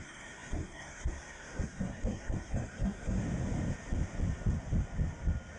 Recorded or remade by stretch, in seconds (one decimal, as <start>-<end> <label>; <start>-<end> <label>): 0.0-3.2 remade; 3.2-5.6 recorded